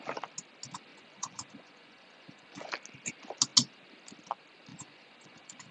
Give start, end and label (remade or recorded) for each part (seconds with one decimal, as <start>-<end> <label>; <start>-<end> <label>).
0.0-0.9 recorded; 0.9-2.7 remade; 2.7-4.7 recorded; 4.7-5.7 remade